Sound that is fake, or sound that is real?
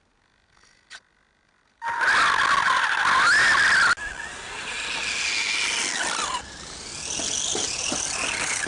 real